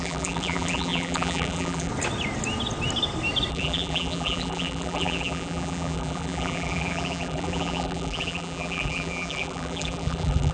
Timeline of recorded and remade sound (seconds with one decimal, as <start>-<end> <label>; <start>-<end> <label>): 0.0-1.9 remade; 1.9-3.5 recorded; 3.5-10.5 remade